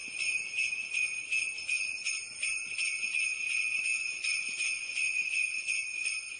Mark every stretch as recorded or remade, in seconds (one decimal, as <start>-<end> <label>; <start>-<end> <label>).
0.0-4.2 recorded; 4.2-5.6 remade; 5.6-6.4 recorded